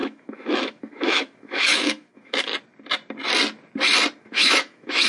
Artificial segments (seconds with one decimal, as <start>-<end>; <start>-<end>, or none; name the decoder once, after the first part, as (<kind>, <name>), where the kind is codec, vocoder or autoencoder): 0.0-2.5 (autoencoder, DAC-VAE); 4.2-5.1